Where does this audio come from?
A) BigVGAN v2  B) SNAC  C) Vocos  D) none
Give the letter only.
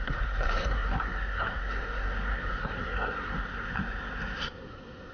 B